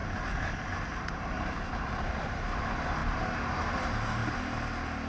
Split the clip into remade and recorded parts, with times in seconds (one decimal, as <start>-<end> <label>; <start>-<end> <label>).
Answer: 0.0-4.2 remade; 4.2-5.1 recorded